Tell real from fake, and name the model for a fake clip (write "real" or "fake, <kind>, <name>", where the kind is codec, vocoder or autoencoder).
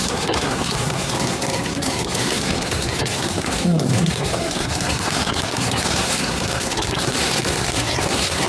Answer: fake, codec, SNAC